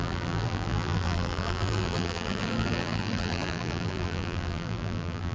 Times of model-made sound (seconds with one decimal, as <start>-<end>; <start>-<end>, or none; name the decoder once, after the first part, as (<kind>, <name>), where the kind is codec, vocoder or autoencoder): 0.0-5.3 (vocoder, BigVGAN v2)